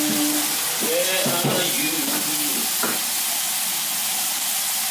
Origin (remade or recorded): recorded